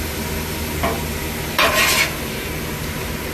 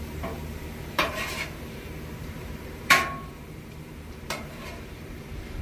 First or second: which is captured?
first